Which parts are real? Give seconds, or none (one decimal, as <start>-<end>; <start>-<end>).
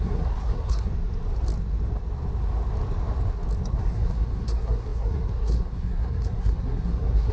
0.9-3.7